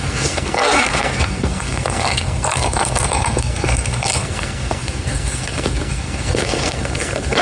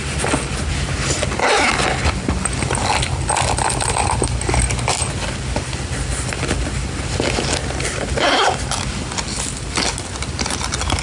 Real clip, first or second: second